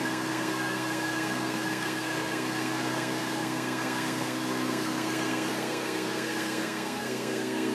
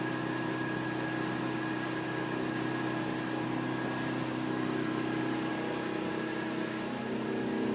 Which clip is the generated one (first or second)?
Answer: first